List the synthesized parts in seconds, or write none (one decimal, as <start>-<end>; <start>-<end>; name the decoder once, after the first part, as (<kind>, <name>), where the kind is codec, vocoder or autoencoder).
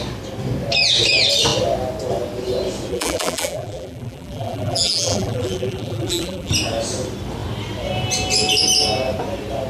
2.9-6.5 (vocoder, BigVGAN v2)